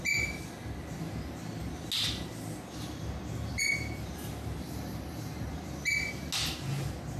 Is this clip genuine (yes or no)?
yes